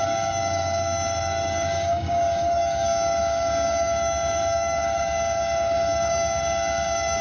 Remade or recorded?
remade